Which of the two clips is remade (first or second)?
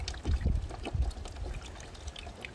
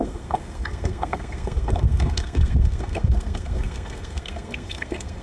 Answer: second